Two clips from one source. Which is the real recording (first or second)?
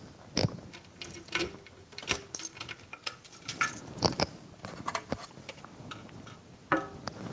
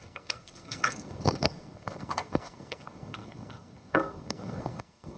first